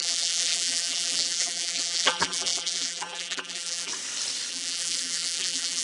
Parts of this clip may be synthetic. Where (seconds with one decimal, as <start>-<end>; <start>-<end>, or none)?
0.0-3.9; 4.5-5.8